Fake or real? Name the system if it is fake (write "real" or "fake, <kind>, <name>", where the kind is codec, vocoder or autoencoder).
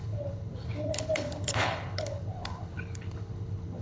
fake, codec, HILCodec